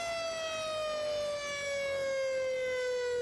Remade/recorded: recorded